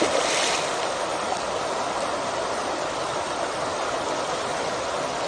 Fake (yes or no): no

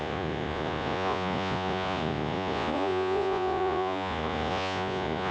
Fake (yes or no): yes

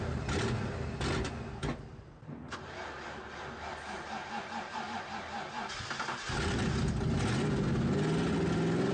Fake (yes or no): no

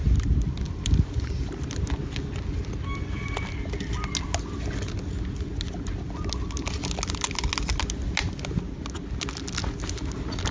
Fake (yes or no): no